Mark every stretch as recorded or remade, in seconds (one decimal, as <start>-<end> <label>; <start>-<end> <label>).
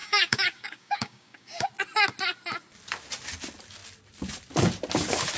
0.0-1.7 remade; 1.7-5.4 recorded